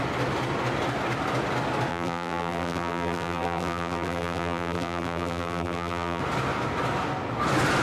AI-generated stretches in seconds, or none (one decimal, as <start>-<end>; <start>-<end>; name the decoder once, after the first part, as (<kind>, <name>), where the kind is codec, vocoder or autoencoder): 1.9-6.2 (vocoder, BigVGAN v2)